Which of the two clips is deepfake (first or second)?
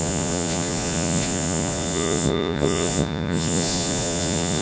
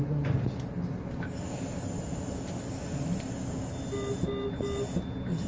first